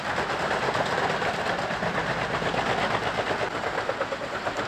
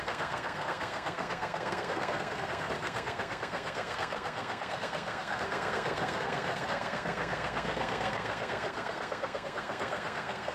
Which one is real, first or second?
first